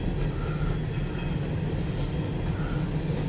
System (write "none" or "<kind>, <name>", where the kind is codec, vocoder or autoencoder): none